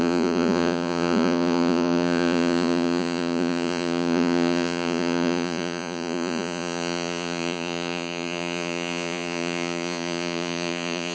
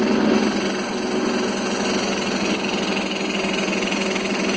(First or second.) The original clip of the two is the second